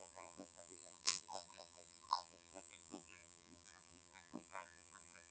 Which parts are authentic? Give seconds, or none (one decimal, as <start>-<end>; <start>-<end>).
none